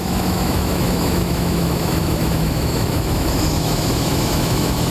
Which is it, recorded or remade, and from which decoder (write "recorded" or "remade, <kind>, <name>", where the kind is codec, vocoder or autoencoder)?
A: remade, autoencoder, DAC-VAE